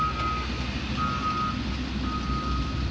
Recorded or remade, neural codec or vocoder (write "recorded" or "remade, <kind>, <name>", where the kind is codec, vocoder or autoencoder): recorded